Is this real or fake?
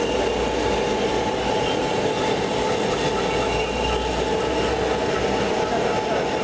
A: real